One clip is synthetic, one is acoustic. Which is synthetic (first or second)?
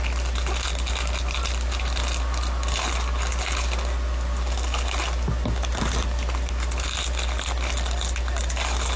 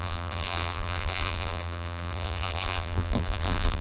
second